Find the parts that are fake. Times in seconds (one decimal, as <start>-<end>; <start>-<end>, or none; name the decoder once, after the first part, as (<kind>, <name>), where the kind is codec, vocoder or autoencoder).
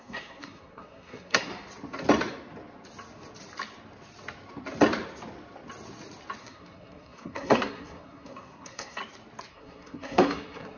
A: 0.0-1.5 (codec, SNAC); 6.4-9.0; 9.5-10.8